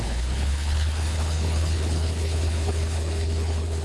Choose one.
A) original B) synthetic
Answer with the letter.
B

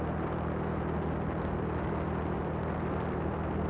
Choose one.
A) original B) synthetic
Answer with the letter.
A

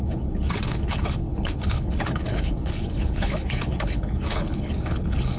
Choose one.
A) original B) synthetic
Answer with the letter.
B